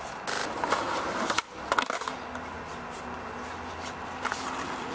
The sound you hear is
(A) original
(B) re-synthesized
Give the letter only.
A